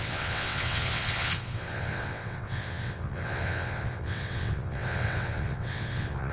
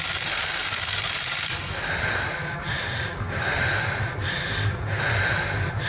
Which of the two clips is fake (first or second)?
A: first